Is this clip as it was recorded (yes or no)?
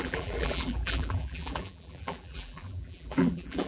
no